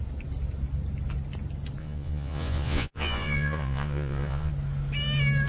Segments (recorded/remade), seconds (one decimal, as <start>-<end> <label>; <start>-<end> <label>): 0.0-1.8 recorded; 1.8-4.5 remade; 4.5-5.5 recorded